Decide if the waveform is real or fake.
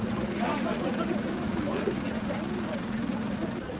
fake